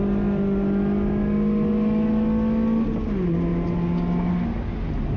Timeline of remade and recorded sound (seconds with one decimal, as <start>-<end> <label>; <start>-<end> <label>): 0.0-5.2 recorded